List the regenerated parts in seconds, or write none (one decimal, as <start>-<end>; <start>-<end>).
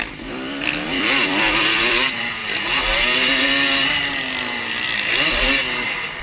0.0-2.4